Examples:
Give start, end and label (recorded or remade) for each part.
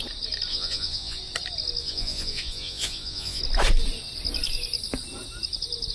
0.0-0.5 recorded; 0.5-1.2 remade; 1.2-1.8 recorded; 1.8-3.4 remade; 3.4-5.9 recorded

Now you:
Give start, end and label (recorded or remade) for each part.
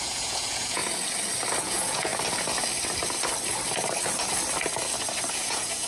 0.0-0.8 remade; 0.8-1.6 recorded; 1.6-2.1 remade; 2.1-5.3 recorded; 5.3-5.9 remade